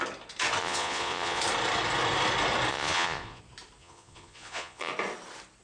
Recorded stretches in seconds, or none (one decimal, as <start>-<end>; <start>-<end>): 0.0-0.6; 1.4-2.7; 3.4-3.8; 4.9-5.6